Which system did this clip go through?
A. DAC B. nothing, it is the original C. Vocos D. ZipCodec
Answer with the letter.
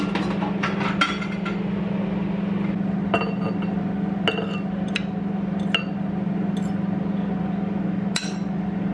B